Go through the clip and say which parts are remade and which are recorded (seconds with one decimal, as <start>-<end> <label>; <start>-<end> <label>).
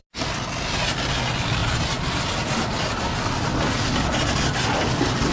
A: 0.0-5.3 recorded